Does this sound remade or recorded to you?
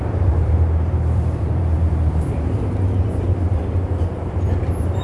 remade